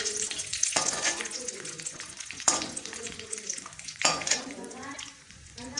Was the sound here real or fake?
fake